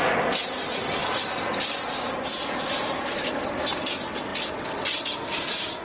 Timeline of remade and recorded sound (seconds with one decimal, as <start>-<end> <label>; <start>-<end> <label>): 0.0-5.8 recorded